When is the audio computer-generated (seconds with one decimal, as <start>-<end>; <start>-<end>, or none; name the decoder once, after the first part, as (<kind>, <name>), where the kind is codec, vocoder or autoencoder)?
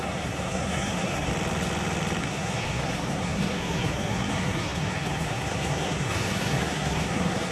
0.0-1.3 (codec, SNAC); 2.2-7.5